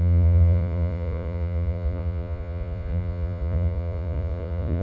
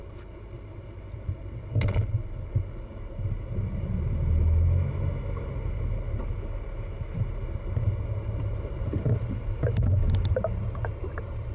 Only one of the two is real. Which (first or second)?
second